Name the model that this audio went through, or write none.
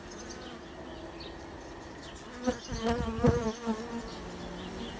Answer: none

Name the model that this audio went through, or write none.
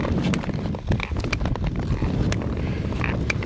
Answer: none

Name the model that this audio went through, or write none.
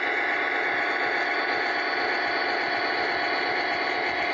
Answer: none